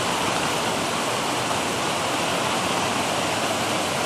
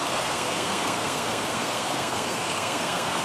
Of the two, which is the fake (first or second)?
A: second